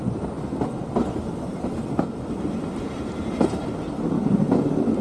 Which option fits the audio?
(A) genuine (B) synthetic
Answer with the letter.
A